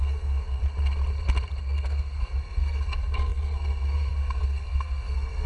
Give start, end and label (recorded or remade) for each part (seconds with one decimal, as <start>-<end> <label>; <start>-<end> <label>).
0.0-0.6 remade; 0.6-1.6 recorded; 1.6-5.5 remade